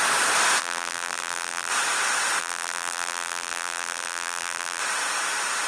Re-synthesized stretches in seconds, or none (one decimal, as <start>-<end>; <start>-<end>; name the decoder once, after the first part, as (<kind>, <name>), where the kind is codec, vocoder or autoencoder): 0.6-1.7 (vocoder, BigVGAN v2); 2.4-4.8

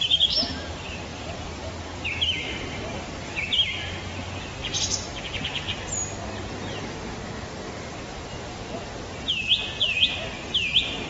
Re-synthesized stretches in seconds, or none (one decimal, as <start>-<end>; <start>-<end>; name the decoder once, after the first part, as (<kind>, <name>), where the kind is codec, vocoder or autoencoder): 1.1-1.7 (vocoder, BigVGAN v2); 2.9-3.5

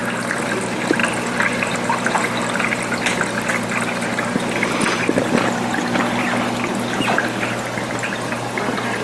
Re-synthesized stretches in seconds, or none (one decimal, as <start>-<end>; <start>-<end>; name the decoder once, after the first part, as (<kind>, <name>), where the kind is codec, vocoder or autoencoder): 1.0-3.2 (vocoder, BigVGAN v2)

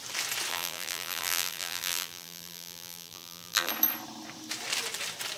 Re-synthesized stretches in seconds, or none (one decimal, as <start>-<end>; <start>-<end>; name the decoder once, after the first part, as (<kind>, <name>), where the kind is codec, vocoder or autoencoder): 0.5-3.7 (vocoder, BigVGAN v2)